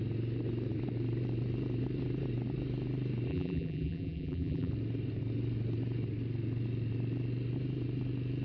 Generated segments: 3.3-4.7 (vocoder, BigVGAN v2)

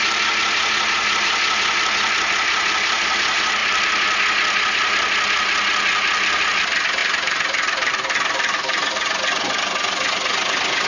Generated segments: 7.0-7.9 (vocoder, BigVGAN v2)

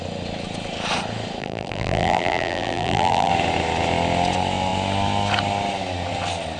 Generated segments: 1.4-3.3 (vocoder, BigVGAN v2)

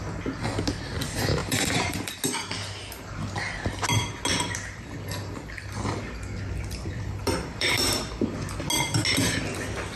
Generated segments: 1.4-2.2 (vocoder, BigVGAN v2); 7.2-7.9

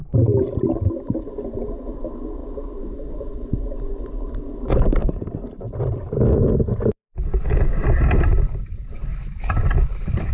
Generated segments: 2.4-4.3 (vocoder, BigVGAN v2); 5.0-5.8; 6.7-8.0; 9.1-9.9